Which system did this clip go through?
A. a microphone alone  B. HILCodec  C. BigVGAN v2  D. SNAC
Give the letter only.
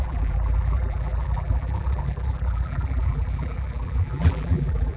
C